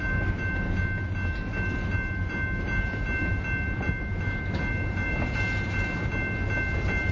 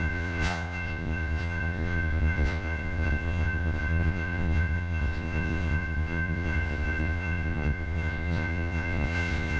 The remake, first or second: second